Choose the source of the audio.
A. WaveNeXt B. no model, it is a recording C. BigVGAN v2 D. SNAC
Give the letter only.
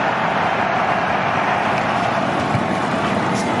B